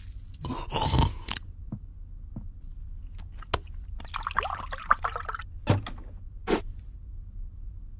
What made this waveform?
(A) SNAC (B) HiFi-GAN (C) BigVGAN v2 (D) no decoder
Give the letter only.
D